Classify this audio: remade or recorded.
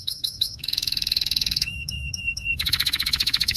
remade